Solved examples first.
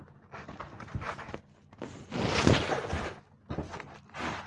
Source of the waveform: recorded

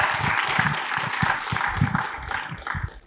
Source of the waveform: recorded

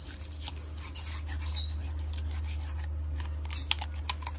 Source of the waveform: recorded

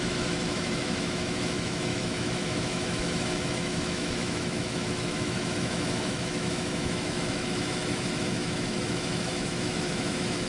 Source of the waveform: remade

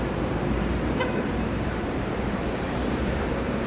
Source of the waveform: remade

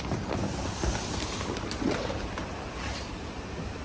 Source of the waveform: remade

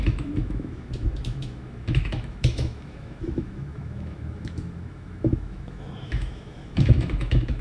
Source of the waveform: remade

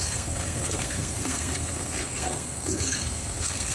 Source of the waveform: remade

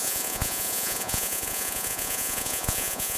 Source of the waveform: remade